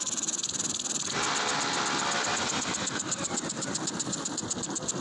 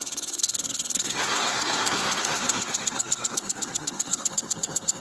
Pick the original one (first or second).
first